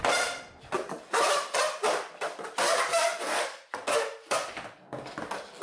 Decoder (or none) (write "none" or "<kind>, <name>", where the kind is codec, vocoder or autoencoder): none